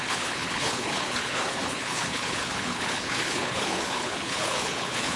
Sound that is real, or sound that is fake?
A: fake